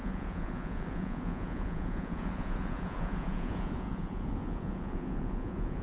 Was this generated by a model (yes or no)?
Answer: yes